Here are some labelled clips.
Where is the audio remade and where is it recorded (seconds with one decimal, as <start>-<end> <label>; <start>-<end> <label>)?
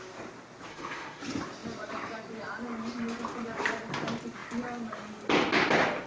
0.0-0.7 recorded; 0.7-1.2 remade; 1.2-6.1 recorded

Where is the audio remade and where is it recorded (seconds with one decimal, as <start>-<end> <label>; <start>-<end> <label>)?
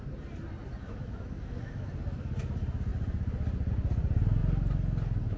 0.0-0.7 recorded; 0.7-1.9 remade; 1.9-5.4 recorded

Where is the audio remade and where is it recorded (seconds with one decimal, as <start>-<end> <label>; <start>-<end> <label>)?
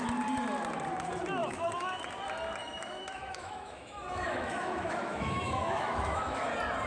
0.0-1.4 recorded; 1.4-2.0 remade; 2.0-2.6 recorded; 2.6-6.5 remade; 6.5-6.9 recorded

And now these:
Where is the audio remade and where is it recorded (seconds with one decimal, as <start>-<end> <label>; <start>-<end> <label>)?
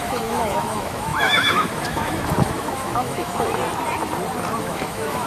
0.0-3.6 remade; 3.6-4.6 recorded; 4.6-5.3 remade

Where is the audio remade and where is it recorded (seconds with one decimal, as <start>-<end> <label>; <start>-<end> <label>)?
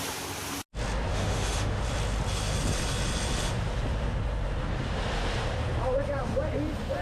0.0-1.1 recorded; 1.1-1.8 remade; 1.8-7.0 recorded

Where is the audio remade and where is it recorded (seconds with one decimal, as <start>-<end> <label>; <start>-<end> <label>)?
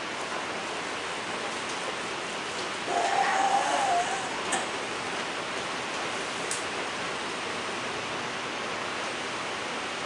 0.0-10.1 recorded